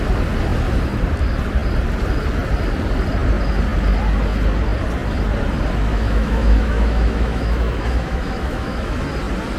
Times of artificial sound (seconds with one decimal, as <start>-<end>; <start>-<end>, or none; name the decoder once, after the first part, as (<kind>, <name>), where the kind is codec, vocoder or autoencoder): 5.9-9.0 (autoencoder, DAC-VAE)